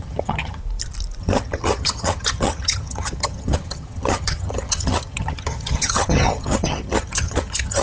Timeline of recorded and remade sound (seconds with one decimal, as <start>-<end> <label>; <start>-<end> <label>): 0.0-0.6 remade; 0.6-1.2 recorded; 1.2-7.8 remade